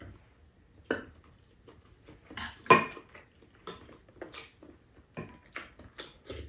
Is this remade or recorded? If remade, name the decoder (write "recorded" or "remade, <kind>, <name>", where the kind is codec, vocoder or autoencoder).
recorded